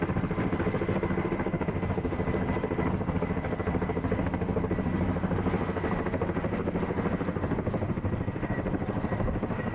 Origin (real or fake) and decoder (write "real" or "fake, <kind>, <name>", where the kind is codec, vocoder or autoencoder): fake, vocoder, BigVGAN v2